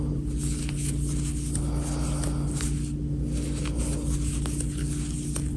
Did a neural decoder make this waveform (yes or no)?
no